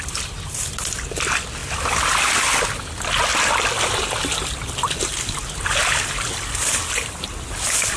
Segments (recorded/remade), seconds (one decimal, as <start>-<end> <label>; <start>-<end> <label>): 0.0-8.0 recorded